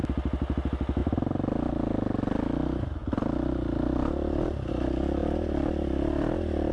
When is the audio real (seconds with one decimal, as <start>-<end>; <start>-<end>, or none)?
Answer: 0.0-6.7